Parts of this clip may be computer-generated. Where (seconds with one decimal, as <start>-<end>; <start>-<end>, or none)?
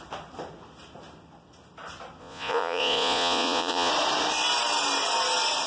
2.2-3.9